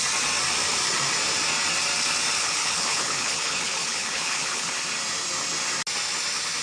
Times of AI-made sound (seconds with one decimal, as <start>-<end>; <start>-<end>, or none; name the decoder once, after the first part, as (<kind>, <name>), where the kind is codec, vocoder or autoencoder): 2.4-4.7 (codec, HILCodec)